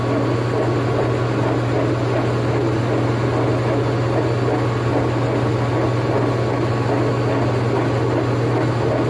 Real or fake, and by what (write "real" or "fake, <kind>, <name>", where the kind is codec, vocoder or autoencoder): real